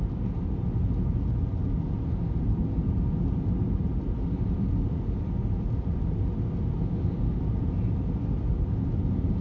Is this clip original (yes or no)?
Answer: yes